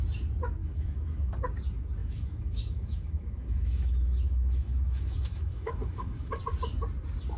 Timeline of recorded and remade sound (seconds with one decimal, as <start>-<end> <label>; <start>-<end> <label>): 0.0-0.6 recorded; 0.6-1.3 remade; 1.3-2.0 recorded; 2.0-6.4 remade; 6.4-7.4 recorded